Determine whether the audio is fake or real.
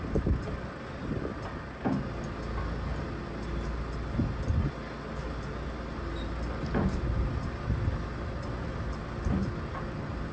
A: real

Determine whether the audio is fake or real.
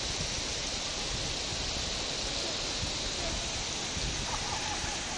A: real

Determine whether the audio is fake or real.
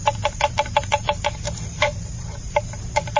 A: fake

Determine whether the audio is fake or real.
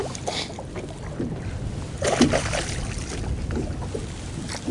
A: real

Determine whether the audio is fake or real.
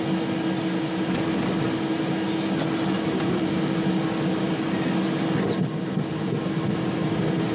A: real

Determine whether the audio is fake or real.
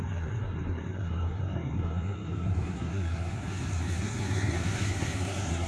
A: fake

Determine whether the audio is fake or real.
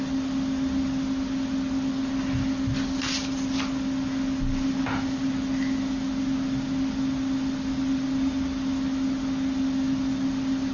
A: real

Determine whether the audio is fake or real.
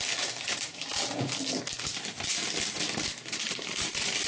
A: real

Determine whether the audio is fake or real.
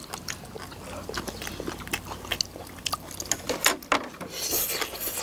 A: real